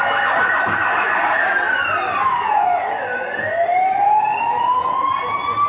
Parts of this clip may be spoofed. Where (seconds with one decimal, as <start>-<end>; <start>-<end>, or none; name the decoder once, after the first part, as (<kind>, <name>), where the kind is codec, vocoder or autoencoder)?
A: none